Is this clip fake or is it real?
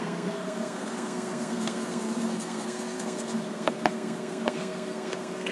fake